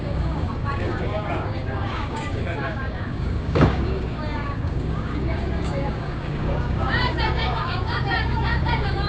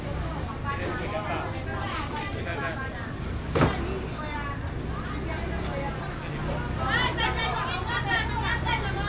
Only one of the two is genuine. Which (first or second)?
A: second